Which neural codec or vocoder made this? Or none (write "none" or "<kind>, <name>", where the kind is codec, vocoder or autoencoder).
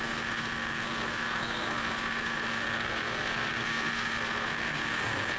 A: codec, SNAC